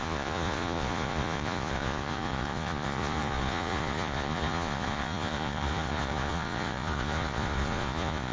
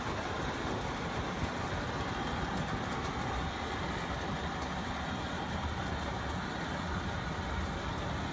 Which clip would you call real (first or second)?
second